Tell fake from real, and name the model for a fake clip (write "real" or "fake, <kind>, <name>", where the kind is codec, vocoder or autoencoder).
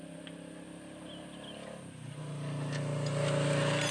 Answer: real